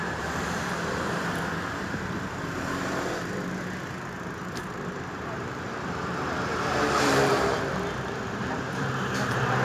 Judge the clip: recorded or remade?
remade